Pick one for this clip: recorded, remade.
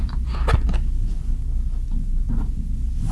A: recorded